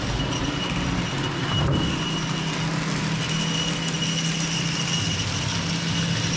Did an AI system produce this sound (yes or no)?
no